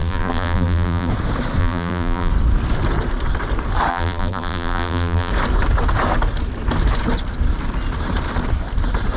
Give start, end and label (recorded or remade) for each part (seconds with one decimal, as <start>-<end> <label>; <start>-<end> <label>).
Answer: 0.0-1.1 remade; 1.1-1.6 recorded; 1.6-2.3 remade; 2.3-3.9 recorded; 3.9-5.3 remade; 5.3-9.2 recorded